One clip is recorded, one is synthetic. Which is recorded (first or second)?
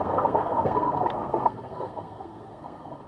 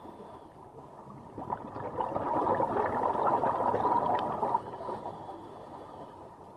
second